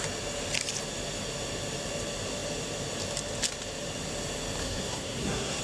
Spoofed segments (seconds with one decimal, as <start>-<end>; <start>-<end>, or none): 4.6-5.6